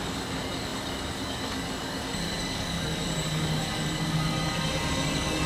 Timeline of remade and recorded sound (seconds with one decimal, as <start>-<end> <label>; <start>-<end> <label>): 0.0-5.5 remade